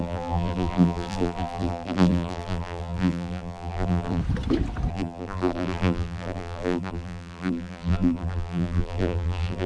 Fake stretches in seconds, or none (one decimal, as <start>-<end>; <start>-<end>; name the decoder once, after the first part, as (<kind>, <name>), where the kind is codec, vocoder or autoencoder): 0.0-4.2 (vocoder, BigVGAN v2); 4.9-9.7